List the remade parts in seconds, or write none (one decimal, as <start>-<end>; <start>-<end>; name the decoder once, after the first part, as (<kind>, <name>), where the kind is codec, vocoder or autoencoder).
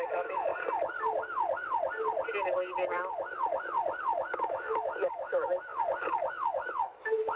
0.0-0.5 (autoencoder, DAC-VAE); 4.0-5.7; 6.3-7.4